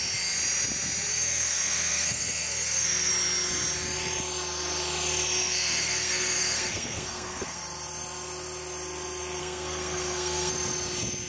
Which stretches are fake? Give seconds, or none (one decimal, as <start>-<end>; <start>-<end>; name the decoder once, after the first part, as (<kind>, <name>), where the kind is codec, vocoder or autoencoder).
1.1-3.1 (codec, SNAC); 5.4-7.6; 9.4-10.5